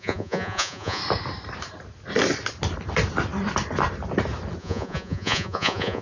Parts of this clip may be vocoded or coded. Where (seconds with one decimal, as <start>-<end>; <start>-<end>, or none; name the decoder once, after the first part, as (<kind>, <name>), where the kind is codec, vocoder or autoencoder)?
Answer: 0.0-1.0 (vocoder, Vocos); 4.6-6.0